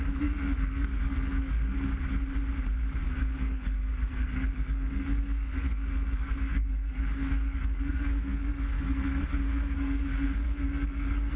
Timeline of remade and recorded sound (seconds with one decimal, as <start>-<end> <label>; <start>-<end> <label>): 0.0-1.9 remade; 1.9-3.0 recorded; 3.0-11.4 remade